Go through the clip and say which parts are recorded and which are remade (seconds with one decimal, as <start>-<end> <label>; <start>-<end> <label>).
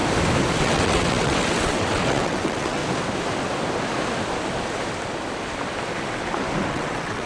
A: 0.0-0.6 recorded; 0.6-2.8 remade; 2.8-6.7 recorded; 6.7-7.3 remade